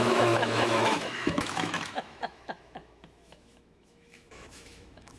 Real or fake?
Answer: fake